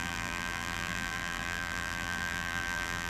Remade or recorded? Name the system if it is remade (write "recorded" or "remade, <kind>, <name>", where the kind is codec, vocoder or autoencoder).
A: remade, vocoder, BigVGAN v2